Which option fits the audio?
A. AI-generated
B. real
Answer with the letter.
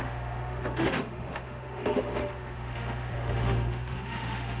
A